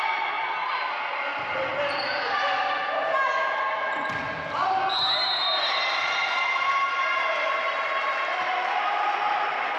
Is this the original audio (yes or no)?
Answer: yes